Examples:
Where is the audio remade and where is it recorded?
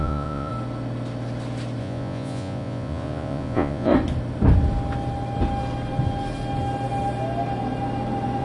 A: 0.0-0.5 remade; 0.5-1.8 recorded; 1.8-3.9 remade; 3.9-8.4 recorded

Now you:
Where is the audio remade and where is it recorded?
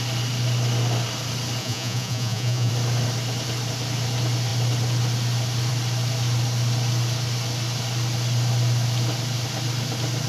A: 0.0-1.6 recorded; 1.6-2.7 remade; 2.7-10.3 recorded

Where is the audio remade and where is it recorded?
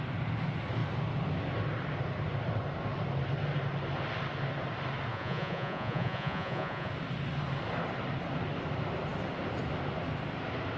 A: 0.0-5.1 recorded; 5.1-6.9 remade; 6.9-10.8 recorded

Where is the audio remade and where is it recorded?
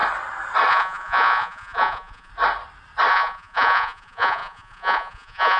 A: 0.0-0.7 recorded; 0.7-2.3 remade; 2.3-3.1 recorded; 3.1-5.6 remade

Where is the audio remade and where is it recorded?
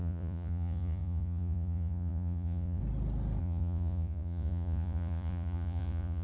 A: 0.0-2.8 remade; 2.8-3.4 recorded; 3.4-6.2 remade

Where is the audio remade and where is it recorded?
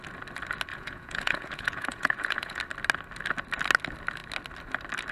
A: 0.0-0.7 recorded; 0.7-2.6 remade; 2.6-5.1 recorded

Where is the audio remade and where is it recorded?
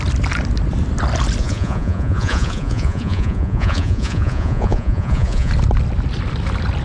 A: 0.0-1.4 recorded; 1.4-5.5 remade; 5.5-6.8 recorded